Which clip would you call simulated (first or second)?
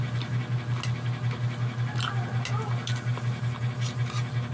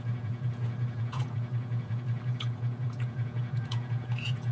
second